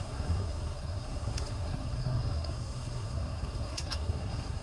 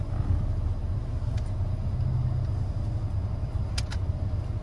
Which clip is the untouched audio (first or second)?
second